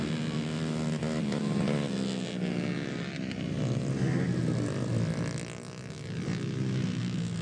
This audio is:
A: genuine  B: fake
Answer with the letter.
A